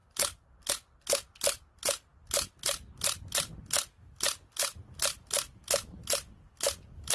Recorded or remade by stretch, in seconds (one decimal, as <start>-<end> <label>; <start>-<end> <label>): 0.0-7.1 recorded